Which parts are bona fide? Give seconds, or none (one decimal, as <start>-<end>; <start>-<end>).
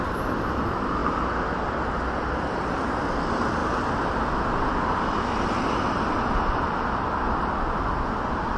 0.0-8.6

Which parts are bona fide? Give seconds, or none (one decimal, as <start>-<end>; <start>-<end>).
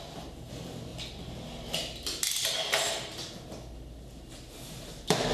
0.0-5.3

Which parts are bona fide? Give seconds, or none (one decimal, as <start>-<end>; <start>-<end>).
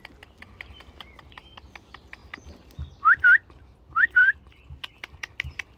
0.0-2.2; 3.5-4.2; 5.3-5.8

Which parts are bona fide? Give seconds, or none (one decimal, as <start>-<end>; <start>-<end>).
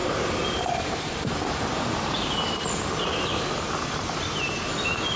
none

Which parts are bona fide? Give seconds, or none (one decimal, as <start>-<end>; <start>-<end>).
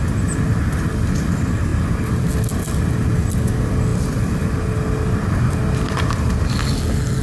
0.0-7.2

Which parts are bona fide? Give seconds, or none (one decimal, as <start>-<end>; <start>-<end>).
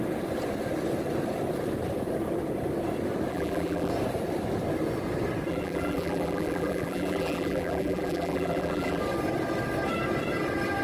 0.0-3.3; 3.9-5.5; 9.0-10.8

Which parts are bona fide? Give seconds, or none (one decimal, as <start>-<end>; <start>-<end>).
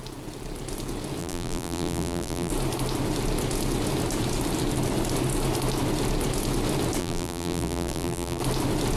0.0-1.2; 2.5-7.0; 8.4-9.0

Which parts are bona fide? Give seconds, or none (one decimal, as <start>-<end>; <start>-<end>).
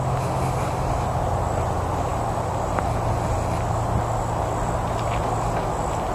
0.0-6.1